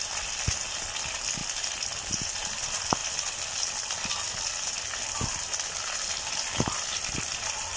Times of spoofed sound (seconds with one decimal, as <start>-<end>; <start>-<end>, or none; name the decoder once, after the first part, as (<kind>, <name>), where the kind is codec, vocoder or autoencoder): none